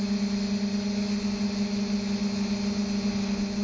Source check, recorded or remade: recorded